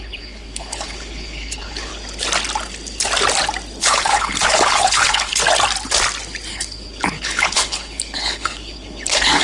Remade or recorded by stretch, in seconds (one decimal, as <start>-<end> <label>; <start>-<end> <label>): 0.0-1.9 remade; 1.9-3.8 recorded; 3.8-5.4 remade; 5.4-6.5 recorded; 6.5-9.4 remade